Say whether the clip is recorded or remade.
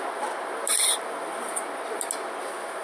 recorded